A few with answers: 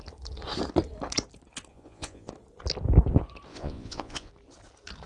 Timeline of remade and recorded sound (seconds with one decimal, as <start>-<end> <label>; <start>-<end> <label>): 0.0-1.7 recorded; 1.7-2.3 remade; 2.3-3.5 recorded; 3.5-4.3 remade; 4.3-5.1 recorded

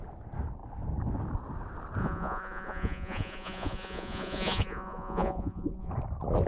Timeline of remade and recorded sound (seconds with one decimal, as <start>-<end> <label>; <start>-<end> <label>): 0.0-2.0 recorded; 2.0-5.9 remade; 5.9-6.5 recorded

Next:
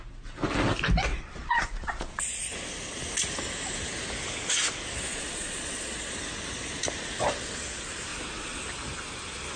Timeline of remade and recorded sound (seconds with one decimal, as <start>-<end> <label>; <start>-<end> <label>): 0.0-1.1 recorded; 1.1-2.4 remade; 2.4-5.1 recorded; 5.1-6.1 remade; 6.1-8.1 recorded; 8.1-8.6 remade; 8.6-9.6 recorded

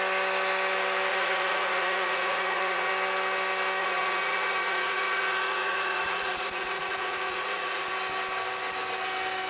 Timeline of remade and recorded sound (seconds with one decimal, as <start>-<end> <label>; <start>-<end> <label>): 0.0-1.1 recorded; 1.1-2.9 remade; 2.9-3.8 recorded; 3.8-7.9 remade; 7.9-9.5 recorded

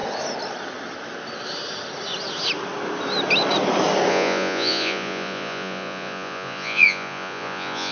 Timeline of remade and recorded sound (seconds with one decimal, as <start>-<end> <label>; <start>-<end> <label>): 0.0-4.1 recorded; 4.1-7.9 remade